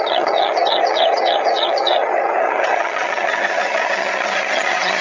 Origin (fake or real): fake